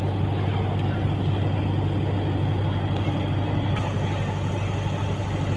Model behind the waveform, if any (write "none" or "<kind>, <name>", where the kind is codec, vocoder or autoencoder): none